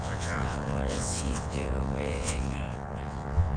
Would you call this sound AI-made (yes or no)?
yes